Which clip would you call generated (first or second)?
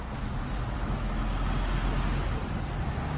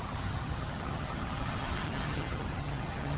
second